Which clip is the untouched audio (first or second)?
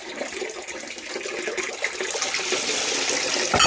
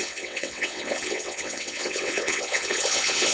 first